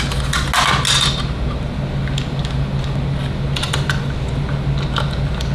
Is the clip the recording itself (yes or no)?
yes